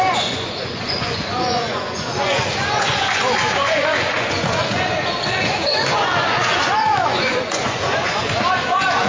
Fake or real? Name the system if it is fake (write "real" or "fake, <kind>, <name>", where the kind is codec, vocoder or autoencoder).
fake, vocoder, Vocos